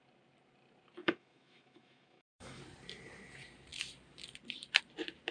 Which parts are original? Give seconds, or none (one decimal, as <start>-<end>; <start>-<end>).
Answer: 0.0-1.0; 2.6-5.3